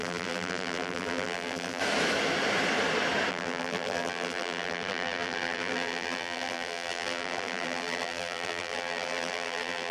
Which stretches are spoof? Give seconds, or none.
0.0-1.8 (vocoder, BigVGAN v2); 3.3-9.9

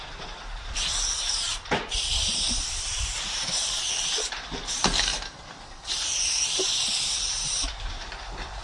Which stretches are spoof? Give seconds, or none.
0.0-5.1 (vocoder, BigVGAN v2); 7.3-8.6

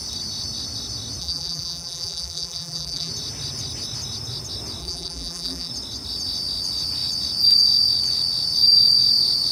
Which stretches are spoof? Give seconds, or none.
1.2-3.1 (vocoder, BigVGAN v2); 4.8-5.7

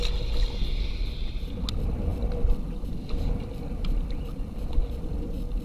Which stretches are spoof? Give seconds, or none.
none

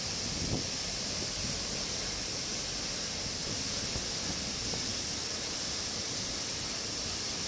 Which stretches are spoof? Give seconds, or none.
none

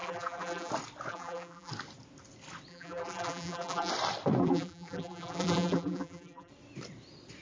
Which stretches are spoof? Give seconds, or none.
0.0-0.7 (vocoder, BigVGAN v2); 1.1-1.7; 2.7-3.9; 4.4-6.5

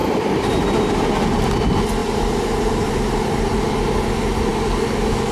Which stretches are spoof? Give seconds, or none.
0.0-1.4 (vocoder, BigVGAN v2); 2.0-3.7